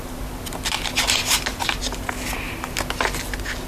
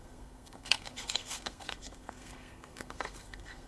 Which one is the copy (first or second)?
second